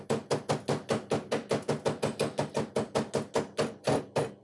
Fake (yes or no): no